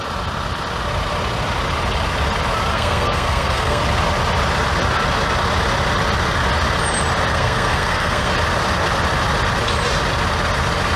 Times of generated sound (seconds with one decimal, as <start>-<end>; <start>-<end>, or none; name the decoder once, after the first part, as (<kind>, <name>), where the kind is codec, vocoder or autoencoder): 2.7-3.8 (codec, SNAC); 7.3-8.3